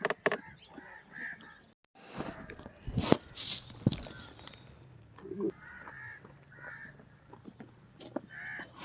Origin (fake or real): real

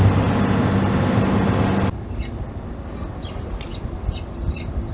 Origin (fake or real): real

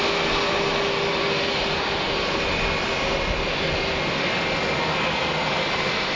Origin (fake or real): real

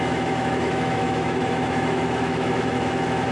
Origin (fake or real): fake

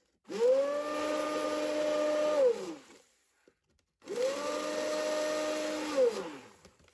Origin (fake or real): real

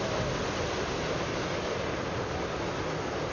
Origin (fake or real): real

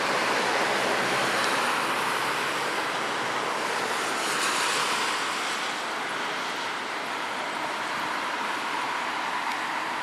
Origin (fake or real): real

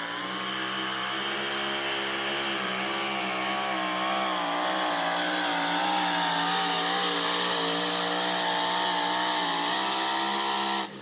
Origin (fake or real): real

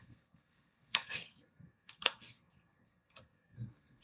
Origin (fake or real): fake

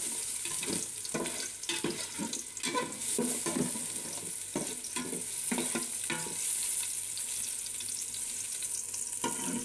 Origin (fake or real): real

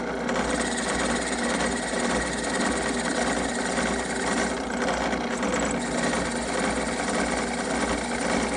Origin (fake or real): real